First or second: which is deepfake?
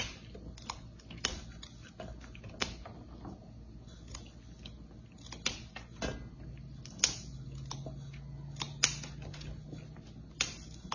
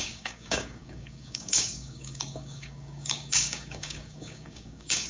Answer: second